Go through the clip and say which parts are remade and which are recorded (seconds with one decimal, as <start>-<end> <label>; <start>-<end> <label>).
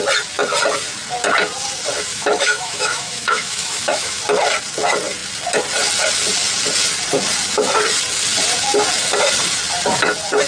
0.0-2.1 recorded; 2.1-4.2 remade; 4.2-10.5 recorded